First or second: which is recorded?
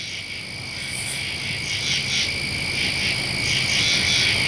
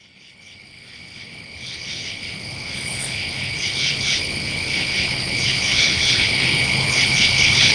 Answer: first